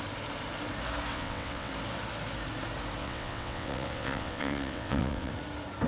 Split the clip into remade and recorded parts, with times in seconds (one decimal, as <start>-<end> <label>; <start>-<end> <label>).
0.0-1.1 recorded; 1.1-1.7 remade; 1.7-3.0 recorded; 3.0-5.3 remade; 5.3-5.9 recorded